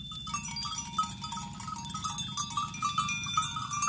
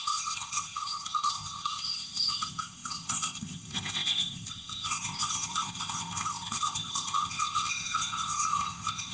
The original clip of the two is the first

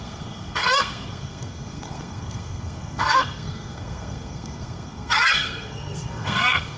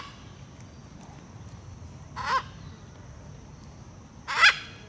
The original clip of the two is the second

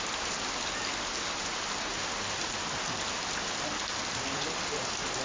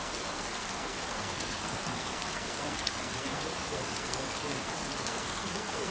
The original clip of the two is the first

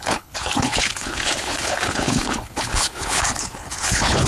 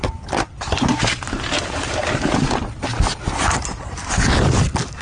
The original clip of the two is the second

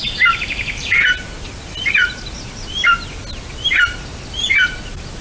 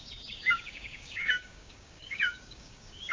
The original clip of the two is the first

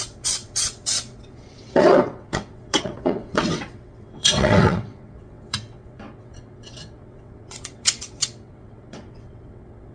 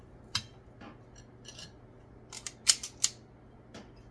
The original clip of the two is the second